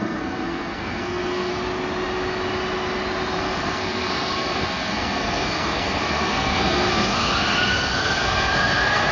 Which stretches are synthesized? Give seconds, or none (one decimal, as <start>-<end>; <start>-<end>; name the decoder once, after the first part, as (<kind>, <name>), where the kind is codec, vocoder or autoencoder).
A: 0.0-1.5 (codec, SNAC); 3.4-9.1